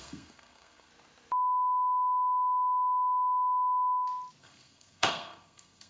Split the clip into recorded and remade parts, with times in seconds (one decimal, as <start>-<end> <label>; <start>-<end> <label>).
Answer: 0.0-0.9 remade; 0.9-4.4 recorded; 4.4-5.9 remade